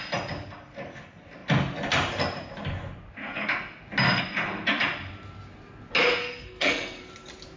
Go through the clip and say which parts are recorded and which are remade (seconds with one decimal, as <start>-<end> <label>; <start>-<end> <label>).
0.0-6.2 recorded; 6.2-7.1 remade; 7.1-7.6 recorded